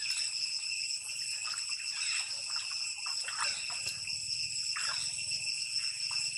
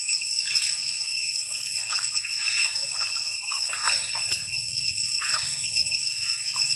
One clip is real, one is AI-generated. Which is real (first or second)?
first